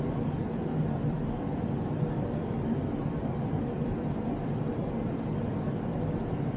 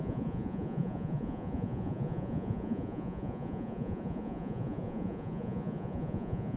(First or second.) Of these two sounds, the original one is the first